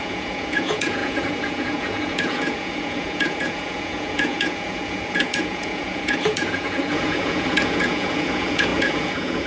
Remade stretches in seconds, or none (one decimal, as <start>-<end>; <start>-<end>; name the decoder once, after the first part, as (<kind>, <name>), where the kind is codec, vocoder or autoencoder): 0.0-9.5 (vocoder, Vocos)